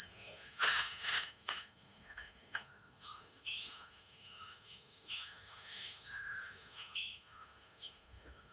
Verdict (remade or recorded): remade